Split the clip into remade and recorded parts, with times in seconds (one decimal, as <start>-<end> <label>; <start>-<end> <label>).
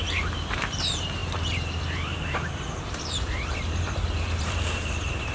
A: 0.0-5.3 remade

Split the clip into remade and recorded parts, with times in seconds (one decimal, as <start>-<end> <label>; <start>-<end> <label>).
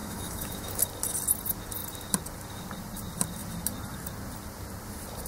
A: 0.0-0.8 remade; 0.8-5.3 recorded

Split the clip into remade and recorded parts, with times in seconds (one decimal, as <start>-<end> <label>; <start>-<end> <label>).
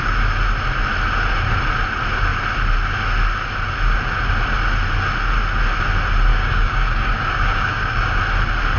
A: 0.0-6.3 recorded; 6.3-8.2 remade; 8.2-8.8 recorded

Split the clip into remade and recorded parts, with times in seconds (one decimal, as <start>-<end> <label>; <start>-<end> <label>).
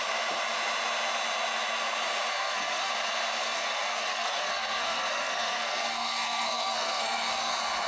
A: 0.0-2.3 recorded; 2.3-2.9 remade; 2.9-3.4 recorded; 3.4-7.5 remade; 7.5-7.9 recorded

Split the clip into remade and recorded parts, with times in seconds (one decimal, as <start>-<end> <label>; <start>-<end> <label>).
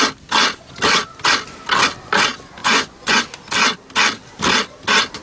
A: 0.0-2.6 recorded; 2.6-3.2 remade; 3.2-5.2 recorded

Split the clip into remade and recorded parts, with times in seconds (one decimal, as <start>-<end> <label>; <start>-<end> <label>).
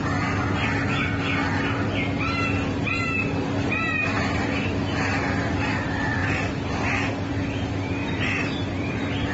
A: 0.0-8.0 recorded; 8.0-9.3 remade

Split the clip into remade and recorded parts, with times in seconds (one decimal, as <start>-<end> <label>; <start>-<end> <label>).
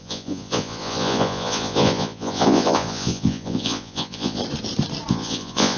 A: 0.0-4.4 remade; 4.4-5.1 recorded; 5.1-5.8 remade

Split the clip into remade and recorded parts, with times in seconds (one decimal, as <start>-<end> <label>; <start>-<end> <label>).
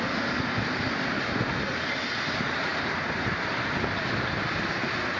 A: 0.0-5.2 recorded